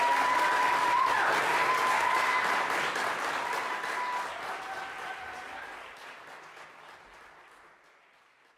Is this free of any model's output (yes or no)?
yes